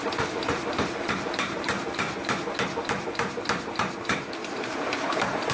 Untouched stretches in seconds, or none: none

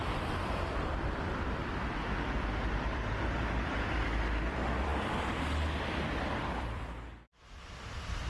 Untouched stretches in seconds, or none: 1.6-2.7

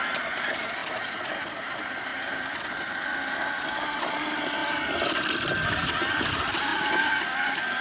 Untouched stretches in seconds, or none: 0.0-2.1; 2.6-7.8

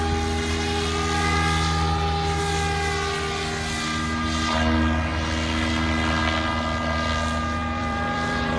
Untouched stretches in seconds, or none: 0.0-7.6

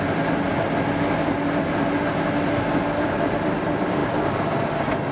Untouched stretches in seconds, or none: 0.5-3.6; 4.0-5.1

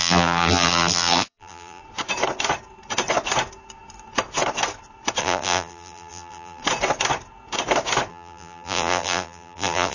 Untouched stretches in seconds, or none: 1.8-5.2; 6.6-8.1

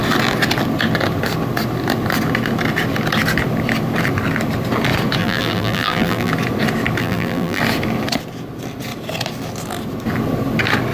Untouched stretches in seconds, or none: 0.0-5.2; 6.3-7.0; 7.6-10.9